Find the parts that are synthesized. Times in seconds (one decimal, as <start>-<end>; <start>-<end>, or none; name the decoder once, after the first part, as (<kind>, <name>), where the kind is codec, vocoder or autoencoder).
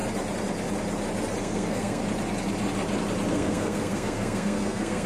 1.4-2.0 (codec, SNAC); 3.3-5.1